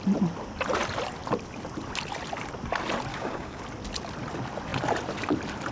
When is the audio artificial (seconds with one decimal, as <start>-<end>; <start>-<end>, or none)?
3.1-3.6